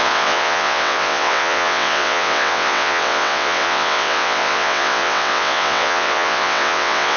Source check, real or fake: fake